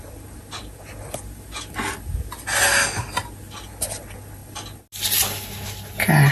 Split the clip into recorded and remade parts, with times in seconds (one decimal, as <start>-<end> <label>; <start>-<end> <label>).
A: 0.0-6.3 recorded